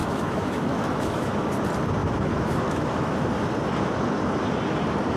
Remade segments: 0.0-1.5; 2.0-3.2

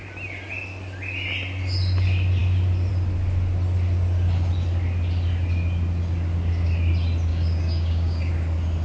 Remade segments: 7.3-8.3

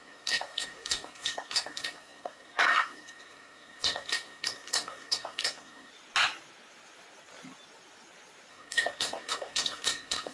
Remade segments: 0.0-5.9; 8.5-10.3

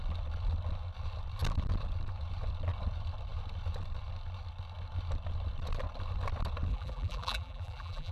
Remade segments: 6.7-8.1

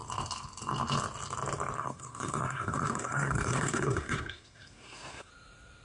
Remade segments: 1.8-5.3

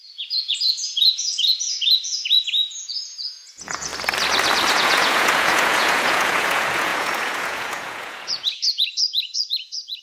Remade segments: 0.0-3.9; 4.7-10.0

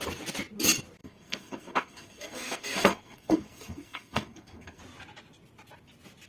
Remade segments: 1.0-4.8

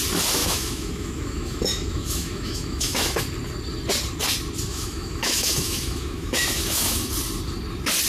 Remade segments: 0.4-3.2; 4.7-7.1